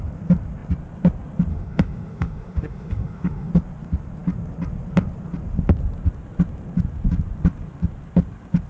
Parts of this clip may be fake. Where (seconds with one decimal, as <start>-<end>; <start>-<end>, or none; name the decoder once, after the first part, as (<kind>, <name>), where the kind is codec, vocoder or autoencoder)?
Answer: 1.5-3.5 (autoencoder, DAC-VAE)